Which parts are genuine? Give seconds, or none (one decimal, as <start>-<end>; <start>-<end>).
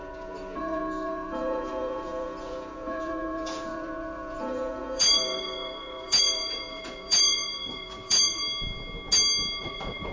8.4-9.6